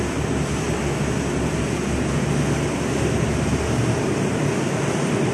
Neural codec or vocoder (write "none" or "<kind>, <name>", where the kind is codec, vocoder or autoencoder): none